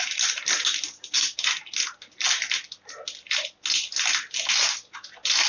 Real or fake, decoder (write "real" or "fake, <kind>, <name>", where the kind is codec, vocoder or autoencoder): real